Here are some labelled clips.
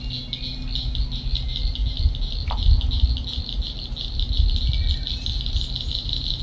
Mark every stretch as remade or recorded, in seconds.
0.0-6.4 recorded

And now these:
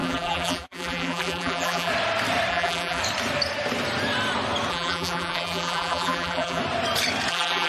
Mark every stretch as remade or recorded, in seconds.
0.0-1.9 remade; 1.9-2.5 recorded; 2.5-3.0 remade; 3.0-4.7 recorded; 4.7-6.6 remade; 6.6-7.3 recorded; 7.3-7.7 remade

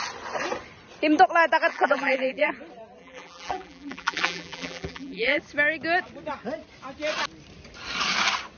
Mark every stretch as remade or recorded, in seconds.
0.0-1.7 recorded; 1.7-2.5 remade; 2.5-3.0 recorded; 3.0-5.4 remade; 5.4-8.6 recorded

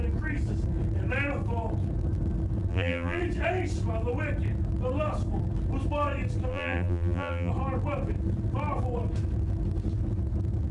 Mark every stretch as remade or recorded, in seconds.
0.0-2.7 recorded; 2.7-3.2 remade; 3.2-6.5 recorded; 6.5-7.5 remade; 7.5-10.7 recorded

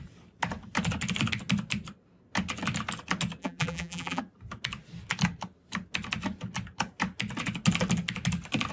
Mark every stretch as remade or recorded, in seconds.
0.0-3.4 recorded; 3.4-4.2 remade; 4.2-8.7 recorded

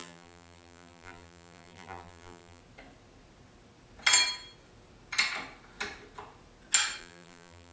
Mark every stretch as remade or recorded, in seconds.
0.0-2.6 remade; 2.6-7.0 recorded; 7.0-7.7 remade

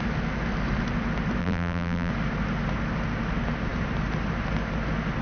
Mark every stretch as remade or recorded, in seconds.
0.0-1.4 recorded; 1.4-2.1 remade; 2.1-5.2 recorded

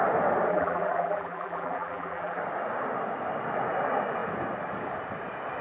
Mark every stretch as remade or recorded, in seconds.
0.0-0.5 recorded; 0.5-2.4 remade; 2.4-5.6 recorded